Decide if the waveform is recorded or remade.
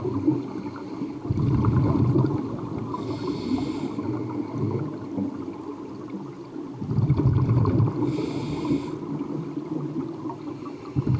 recorded